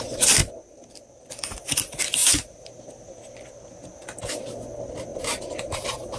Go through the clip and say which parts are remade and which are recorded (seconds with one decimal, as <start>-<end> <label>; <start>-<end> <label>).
0.0-0.4 recorded; 0.4-1.3 remade; 1.3-2.2 recorded; 2.2-2.7 remade; 2.7-5.1 recorded; 5.1-6.2 remade